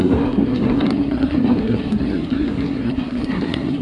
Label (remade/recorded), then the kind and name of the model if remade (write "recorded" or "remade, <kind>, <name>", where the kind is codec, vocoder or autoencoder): remade, codec, SNAC